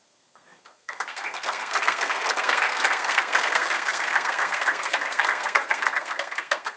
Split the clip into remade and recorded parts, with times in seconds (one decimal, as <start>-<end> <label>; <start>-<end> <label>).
0.0-6.8 remade